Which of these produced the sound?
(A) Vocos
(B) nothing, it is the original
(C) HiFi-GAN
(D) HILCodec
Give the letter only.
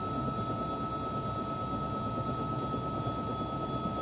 B